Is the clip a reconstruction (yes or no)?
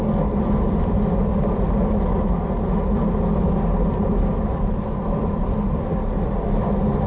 no